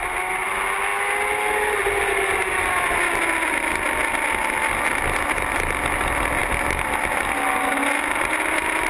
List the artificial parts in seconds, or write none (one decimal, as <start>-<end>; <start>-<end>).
none

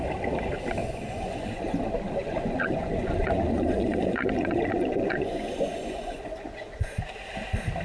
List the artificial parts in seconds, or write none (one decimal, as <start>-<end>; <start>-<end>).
0.8-1.6; 2.2-6.9

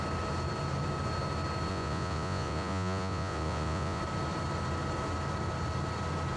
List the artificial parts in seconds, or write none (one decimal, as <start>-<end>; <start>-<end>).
1.7-4.0

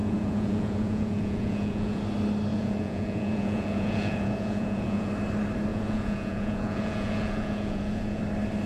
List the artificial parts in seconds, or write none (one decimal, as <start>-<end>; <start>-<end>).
0.0-2.0; 2.5-5.1; 5.7-8.2

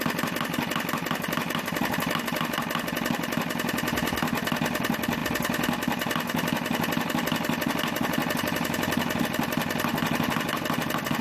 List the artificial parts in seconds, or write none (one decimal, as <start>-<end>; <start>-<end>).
none

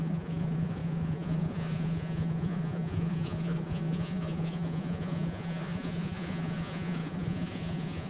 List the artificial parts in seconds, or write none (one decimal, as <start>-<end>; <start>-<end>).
0.0-8.1

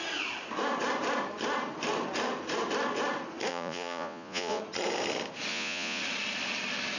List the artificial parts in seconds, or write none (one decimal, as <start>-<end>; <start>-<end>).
3.5-4.6; 5.5-6.0

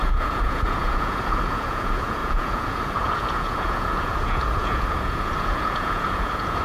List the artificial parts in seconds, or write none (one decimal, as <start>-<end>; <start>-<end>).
0.0-6.6